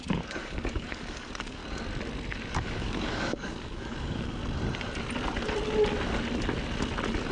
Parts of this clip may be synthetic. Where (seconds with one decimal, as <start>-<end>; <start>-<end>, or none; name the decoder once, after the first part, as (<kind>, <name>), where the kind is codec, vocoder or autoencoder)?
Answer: 0.0-1.6 (codec, DAC); 2.5-4.4